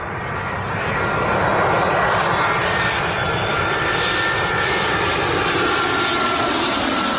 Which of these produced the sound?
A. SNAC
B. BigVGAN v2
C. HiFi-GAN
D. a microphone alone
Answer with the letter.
D